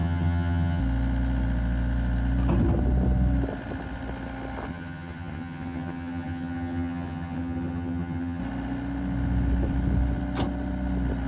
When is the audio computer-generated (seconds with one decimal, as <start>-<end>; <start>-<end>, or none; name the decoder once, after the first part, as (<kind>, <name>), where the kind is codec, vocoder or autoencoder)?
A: 0.0-0.8 (vocoder, HiFi-GAN); 4.7-8.4